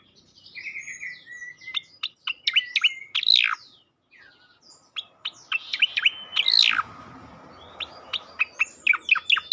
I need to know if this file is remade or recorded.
recorded